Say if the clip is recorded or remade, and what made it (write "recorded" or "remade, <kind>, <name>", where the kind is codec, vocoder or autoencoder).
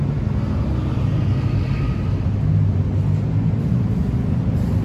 recorded